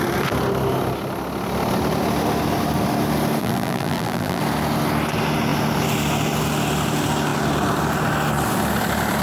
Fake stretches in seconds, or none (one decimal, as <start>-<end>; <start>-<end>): 3.4-4.4